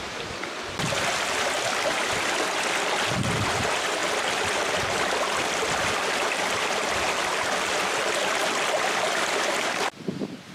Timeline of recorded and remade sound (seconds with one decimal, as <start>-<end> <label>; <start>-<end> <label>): 0.0-8.4 recorded; 8.4-9.5 remade; 9.5-10.5 recorded